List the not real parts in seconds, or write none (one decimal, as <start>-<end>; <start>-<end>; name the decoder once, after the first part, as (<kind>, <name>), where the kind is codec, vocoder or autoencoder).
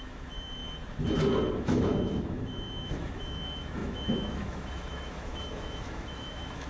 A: 0.0-0.6 (autoencoder, DAC-VAE); 1.6-6.7